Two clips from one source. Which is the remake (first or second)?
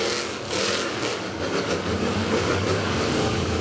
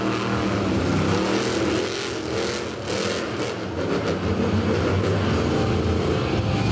first